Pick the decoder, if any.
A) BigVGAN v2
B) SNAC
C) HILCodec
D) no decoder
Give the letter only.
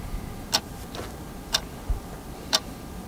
A